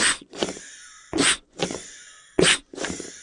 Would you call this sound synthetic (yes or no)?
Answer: yes